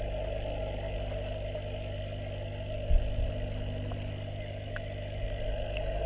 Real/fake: real